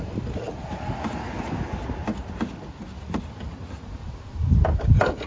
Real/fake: real